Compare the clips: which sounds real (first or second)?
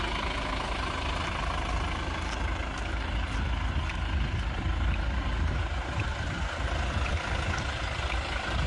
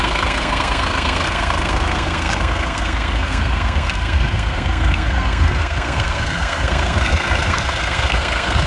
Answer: first